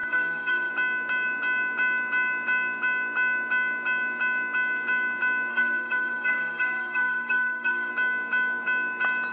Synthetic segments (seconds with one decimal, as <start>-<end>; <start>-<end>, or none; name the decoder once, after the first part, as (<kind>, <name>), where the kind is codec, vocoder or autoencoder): 0.0-0.7 (codec, SNAC); 5.5-7.9